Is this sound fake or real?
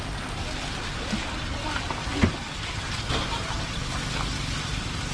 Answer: real